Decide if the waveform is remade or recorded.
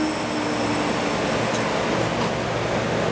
recorded